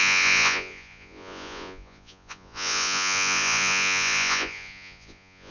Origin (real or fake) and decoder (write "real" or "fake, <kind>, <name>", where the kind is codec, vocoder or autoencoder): fake, vocoder, Vocos